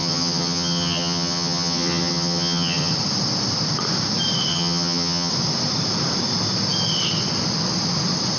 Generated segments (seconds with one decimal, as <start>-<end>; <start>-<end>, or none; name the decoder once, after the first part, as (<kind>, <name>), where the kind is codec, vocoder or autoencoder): 0.0-2.9 (vocoder, HiFi-GAN); 4.5-5.3